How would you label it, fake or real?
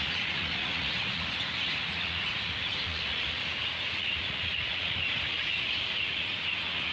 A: fake